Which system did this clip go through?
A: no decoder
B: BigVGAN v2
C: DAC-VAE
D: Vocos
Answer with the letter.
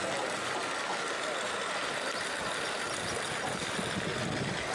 A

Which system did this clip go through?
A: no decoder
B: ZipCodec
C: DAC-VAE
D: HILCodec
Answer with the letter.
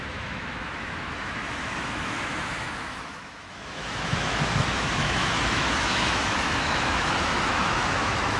C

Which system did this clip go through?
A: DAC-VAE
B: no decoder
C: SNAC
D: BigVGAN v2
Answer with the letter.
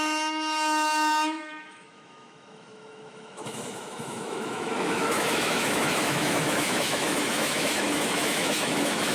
A